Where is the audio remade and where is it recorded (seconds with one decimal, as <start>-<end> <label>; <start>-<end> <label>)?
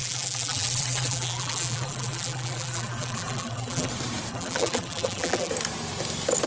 0.0-3.9 remade; 3.9-4.3 recorded; 4.3-5.5 remade; 5.5-6.5 recorded